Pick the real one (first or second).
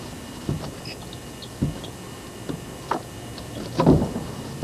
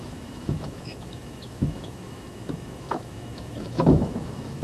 first